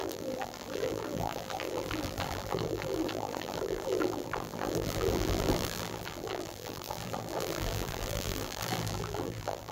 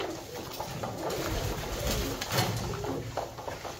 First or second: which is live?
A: second